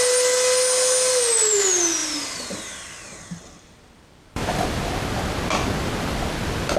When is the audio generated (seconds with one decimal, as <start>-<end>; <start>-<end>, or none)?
2.0-4.8